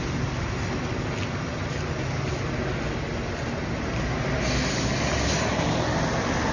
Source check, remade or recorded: recorded